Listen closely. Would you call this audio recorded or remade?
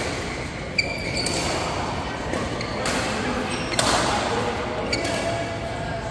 recorded